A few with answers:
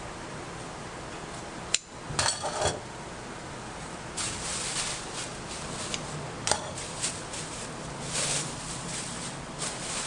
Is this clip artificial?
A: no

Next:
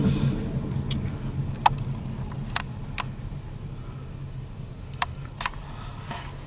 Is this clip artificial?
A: no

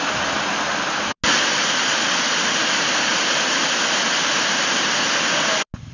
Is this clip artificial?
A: no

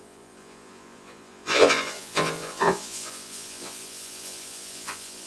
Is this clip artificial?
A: yes